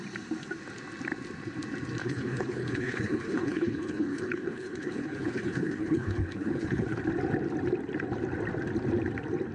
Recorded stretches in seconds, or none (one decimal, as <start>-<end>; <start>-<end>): 0.0-2.0; 7.0-9.5